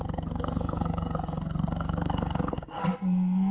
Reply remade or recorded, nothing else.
remade